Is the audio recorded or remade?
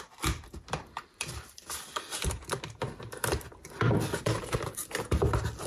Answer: remade